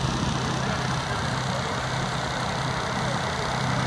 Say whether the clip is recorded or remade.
recorded